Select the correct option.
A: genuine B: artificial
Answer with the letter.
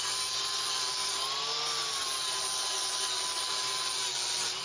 A